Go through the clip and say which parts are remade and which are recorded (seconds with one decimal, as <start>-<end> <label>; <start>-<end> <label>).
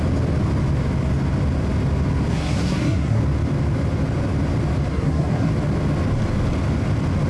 0.0-2.3 recorded; 2.3-3.2 remade; 3.2-4.9 recorded; 4.9-5.5 remade; 5.5-7.3 recorded